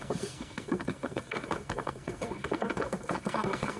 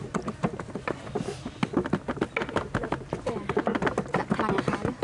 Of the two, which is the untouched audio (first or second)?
second